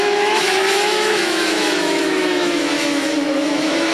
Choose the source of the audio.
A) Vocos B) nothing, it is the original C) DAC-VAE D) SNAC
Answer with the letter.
C